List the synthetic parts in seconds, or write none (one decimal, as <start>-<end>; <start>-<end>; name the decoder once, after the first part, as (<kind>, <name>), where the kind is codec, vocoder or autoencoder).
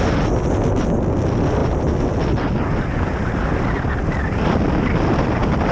1.6-2.5 (vocoder, BigVGAN v2)